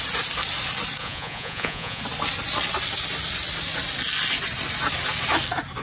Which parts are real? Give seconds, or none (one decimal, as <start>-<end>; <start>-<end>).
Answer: 0.0-1.0; 2.0-5.8